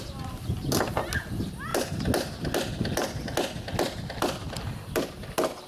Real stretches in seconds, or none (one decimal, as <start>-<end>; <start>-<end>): 0.0-5.7